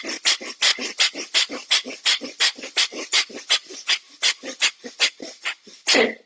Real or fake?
real